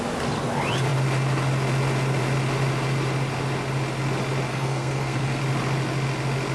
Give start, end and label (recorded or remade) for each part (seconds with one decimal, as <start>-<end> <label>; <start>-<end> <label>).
0.0-4.5 recorded; 4.5-5.4 remade; 5.4-6.5 recorded